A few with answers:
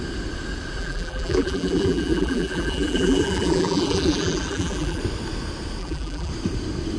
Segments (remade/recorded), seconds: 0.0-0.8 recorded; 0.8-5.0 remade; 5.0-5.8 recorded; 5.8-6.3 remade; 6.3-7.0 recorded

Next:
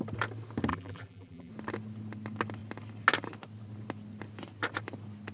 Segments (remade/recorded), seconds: 0.0-0.7 recorded; 0.7-1.5 remade; 1.5-5.3 recorded